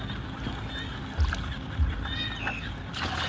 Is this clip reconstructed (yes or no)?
no